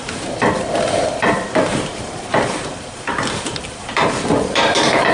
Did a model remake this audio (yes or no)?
yes